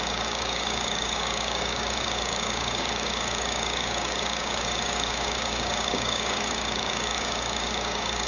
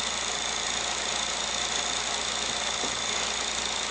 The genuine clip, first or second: second